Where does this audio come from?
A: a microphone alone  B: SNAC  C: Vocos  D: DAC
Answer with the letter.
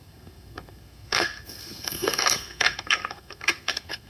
B